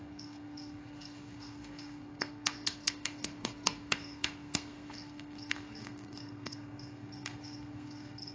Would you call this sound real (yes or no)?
no